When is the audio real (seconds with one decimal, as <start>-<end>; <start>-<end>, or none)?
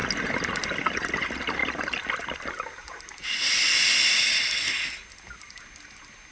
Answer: 0.0-6.3